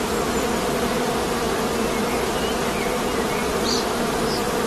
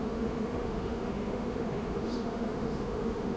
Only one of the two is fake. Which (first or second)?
second